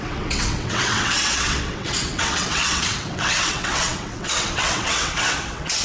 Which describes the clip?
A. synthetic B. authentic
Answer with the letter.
A